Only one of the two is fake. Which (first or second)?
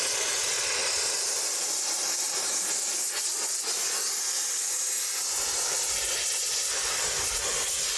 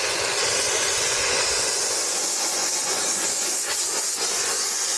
second